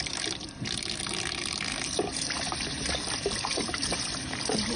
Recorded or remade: remade